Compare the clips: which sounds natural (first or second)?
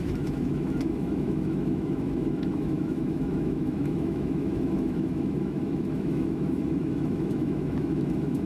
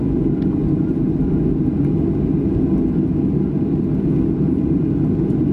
second